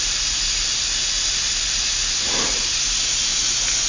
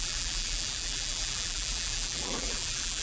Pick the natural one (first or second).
first